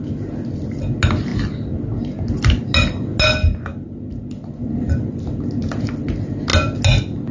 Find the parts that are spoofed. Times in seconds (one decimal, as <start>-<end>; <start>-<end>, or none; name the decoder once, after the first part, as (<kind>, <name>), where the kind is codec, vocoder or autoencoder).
none